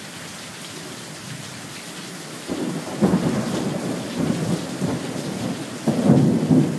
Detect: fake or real real